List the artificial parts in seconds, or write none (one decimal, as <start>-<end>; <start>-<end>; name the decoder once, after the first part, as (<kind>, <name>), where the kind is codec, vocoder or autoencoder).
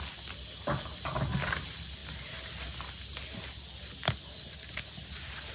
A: none